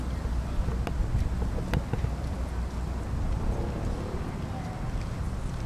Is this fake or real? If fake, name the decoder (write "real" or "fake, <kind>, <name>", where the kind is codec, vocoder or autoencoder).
real